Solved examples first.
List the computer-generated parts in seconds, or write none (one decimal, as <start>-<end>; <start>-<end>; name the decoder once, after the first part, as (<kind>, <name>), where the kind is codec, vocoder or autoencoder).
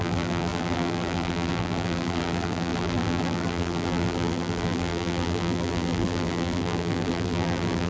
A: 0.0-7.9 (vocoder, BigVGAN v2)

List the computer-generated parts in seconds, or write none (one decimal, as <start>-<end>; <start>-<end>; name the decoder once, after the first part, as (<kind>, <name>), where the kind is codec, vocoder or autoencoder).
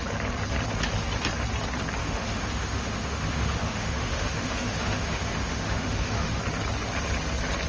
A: 2.0-6.4 (autoencoder, DAC-VAE)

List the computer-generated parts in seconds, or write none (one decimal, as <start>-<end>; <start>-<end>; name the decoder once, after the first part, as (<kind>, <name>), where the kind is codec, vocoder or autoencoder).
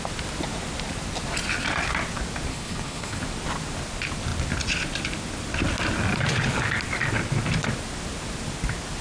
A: 2.5-3.2 (codec, HILCodec)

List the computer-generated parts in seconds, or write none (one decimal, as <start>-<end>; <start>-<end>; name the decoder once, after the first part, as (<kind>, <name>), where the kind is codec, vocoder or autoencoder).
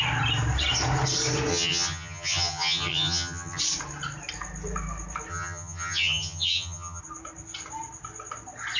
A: 1.5-3.6 (vocoder, HiFi-GAN); 5.3-7.0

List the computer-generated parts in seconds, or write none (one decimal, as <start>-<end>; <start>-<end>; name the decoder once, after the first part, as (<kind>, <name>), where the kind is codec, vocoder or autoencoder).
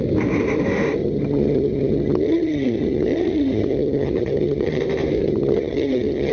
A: 1.0-4.8 (vocoder, HiFi-GAN); 5.2-6.3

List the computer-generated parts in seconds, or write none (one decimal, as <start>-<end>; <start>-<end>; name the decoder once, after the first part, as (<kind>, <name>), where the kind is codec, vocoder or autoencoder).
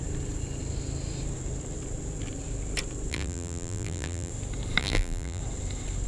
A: 3.1-4.3 (vocoder, BigVGAN v2); 4.8-5.4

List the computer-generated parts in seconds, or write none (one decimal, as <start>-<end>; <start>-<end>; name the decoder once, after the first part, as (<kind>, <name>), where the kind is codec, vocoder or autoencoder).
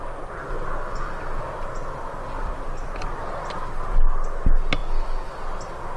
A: none